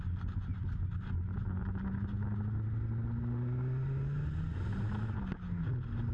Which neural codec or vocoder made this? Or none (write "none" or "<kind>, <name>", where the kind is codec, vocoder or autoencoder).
none